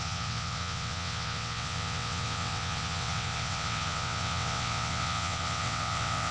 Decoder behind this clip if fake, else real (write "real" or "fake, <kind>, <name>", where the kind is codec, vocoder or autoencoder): fake, vocoder, WaveNeXt